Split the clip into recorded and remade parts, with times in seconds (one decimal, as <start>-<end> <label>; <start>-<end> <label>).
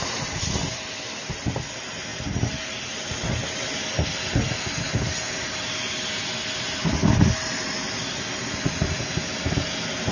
0.0-10.1 recorded